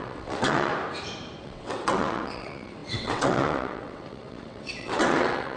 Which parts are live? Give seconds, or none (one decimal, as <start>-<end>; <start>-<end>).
0.7-1.4